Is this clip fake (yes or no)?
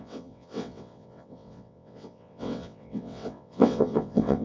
yes